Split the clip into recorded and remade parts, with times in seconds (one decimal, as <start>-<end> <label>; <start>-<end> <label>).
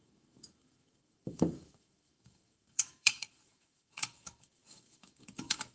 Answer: 0.0-5.7 remade